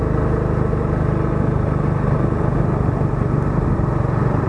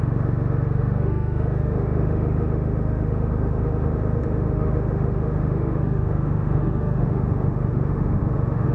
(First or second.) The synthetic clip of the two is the second